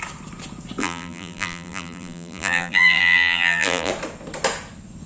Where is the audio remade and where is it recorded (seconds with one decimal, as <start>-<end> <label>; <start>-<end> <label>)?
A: 0.0-0.8 recorded; 0.8-3.9 remade; 3.9-5.1 recorded